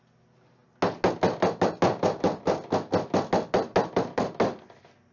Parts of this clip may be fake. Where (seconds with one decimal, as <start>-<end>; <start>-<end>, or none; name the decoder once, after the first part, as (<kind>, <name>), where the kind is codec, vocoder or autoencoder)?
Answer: none